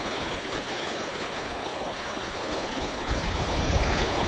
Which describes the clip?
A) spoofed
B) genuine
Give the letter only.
A